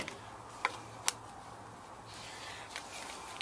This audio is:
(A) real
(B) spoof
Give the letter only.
A